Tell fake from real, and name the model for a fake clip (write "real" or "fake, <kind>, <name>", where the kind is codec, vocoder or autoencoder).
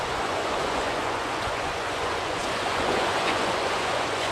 fake, vocoder, Vocos